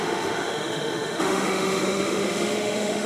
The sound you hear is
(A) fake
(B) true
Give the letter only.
A